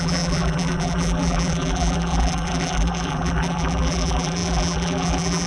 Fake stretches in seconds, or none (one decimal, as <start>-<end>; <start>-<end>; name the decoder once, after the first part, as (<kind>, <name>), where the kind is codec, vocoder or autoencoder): 0.0-5.5 (vocoder, BigVGAN v2)